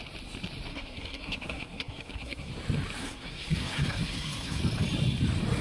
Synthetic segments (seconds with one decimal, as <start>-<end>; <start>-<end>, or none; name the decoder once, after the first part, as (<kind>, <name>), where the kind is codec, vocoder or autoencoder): 0.7-2.5 (codec, SNAC); 3.0-4.6